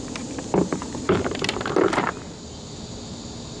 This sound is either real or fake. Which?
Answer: fake